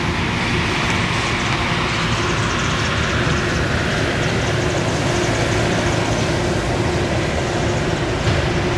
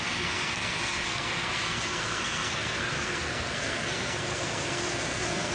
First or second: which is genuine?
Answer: first